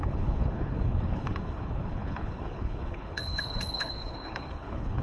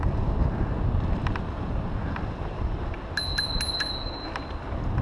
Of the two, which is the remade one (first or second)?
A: first